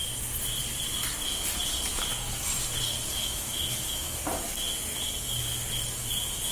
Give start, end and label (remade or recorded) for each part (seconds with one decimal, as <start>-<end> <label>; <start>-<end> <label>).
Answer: 0.0-3.1 recorded; 3.1-4.2 remade; 4.2-6.5 recorded